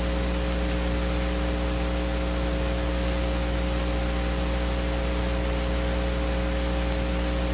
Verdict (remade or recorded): recorded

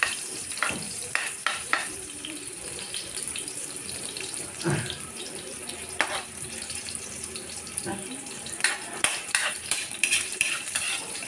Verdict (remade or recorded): remade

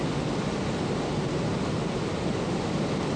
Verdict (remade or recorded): recorded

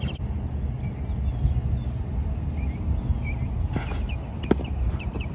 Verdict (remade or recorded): recorded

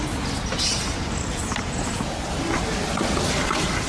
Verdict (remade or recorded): recorded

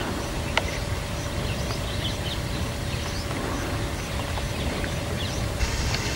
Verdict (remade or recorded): recorded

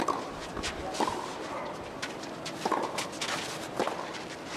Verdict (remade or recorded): remade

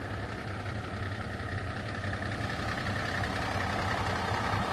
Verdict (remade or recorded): remade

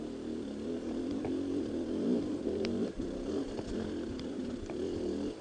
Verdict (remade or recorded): recorded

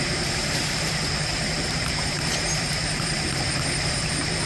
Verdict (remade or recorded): remade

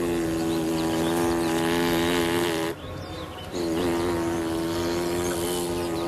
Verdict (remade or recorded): recorded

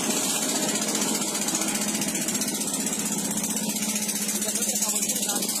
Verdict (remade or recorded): recorded